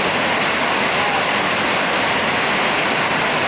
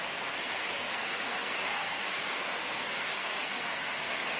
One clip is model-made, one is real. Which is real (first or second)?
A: first